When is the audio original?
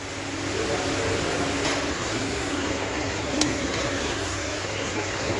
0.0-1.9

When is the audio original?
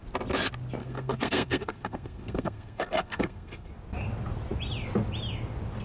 0.0-0.8; 3.7-5.8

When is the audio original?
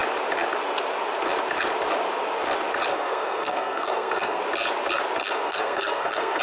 0.0-2.9; 4.4-5.2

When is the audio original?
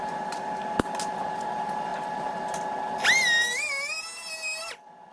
0.0-5.1